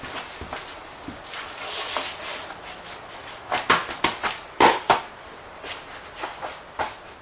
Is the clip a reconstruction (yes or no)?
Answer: no